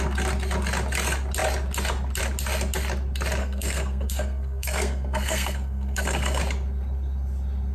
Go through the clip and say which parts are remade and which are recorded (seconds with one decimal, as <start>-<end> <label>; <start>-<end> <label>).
0.0-3.4 recorded; 3.4-6.4 remade; 6.4-7.7 recorded